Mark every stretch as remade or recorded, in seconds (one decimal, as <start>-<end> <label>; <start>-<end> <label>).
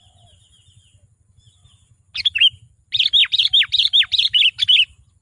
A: 0.0-3.2 recorded; 3.2-4.6 remade; 4.6-5.2 recorded